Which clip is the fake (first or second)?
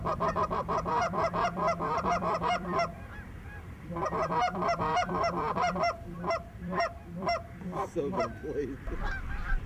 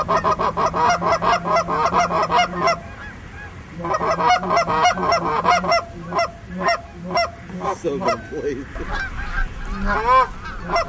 first